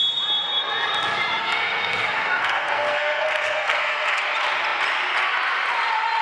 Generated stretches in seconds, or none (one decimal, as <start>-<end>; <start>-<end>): 1.4-4.2